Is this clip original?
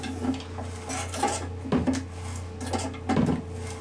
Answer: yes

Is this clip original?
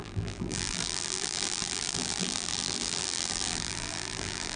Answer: no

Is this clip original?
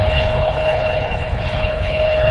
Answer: no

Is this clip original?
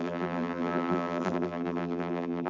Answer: no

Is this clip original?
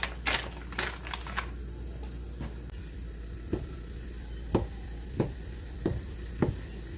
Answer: yes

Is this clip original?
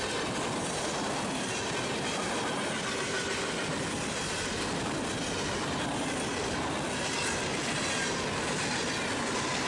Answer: yes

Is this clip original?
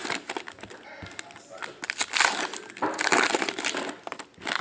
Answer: yes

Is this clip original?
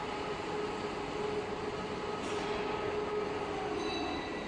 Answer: yes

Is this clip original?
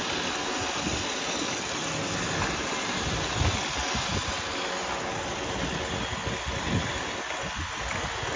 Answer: yes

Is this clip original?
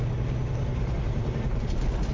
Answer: yes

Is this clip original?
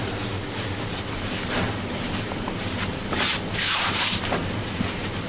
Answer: yes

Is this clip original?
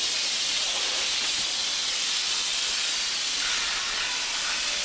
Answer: yes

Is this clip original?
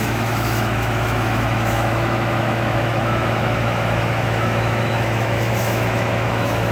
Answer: no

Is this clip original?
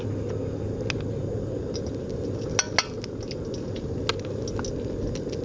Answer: yes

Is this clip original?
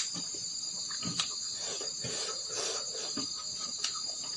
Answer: yes